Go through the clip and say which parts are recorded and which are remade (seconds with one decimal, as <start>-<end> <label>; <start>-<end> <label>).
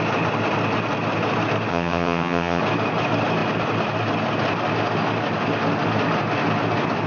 0.0-1.7 recorded; 1.7-2.6 remade; 2.6-7.1 recorded